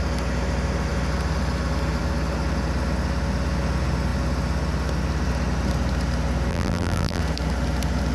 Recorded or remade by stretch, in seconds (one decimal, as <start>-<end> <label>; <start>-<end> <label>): 0.0-6.5 recorded; 6.5-7.2 remade; 7.2-8.1 recorded